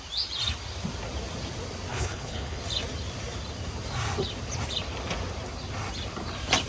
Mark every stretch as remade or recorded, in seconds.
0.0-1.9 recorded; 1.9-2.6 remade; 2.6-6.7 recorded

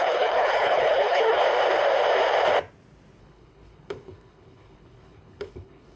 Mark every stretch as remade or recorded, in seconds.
0.0-1.4 remade; 1.4-3.2 recorded; 3.2-6.0 remade

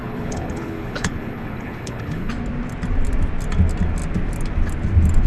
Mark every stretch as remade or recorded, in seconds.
0.0-2.3 remade; 2.3-5.3 recorded

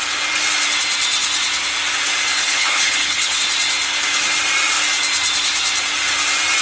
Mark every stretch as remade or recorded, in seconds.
0.0-2.4 recorded; 2.4-3.4 remade; 3.4-6.6 recorded

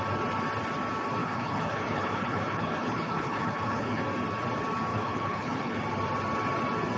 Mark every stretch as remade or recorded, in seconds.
0.0-1.2 recorded; 1.2-4.0 remade; 4.0-4.9 recorded; 4.9-5.7 remade; 5.7-7.0 recorded

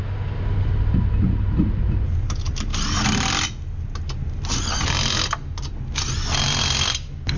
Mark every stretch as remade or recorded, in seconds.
0.0-7.4 recorded

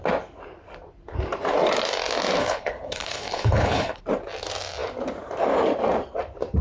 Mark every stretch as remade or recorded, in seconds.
0.0-2.4 recorded; 2.4-4.0 remade; 4.0-6.6 recorded